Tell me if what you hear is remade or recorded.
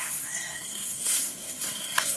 remade